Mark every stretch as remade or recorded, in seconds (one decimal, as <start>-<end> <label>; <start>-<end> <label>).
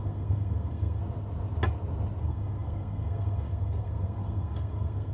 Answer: 0.0-1.0 remade; 1.0-2.2 recorded; 2.2-5.1 remade